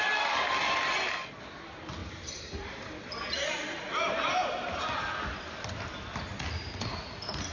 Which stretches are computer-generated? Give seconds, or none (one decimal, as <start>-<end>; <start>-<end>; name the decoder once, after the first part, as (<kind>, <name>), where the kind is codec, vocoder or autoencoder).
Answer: 2.0-4.4 (vocoder, BigVGAN v2)